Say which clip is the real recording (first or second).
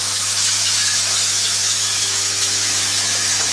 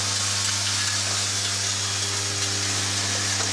second